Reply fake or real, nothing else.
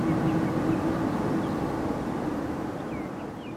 real